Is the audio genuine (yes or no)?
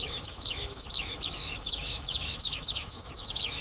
no